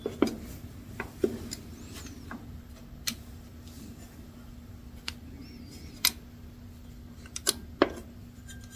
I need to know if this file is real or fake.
real